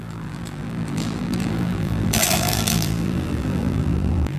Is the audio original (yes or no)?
no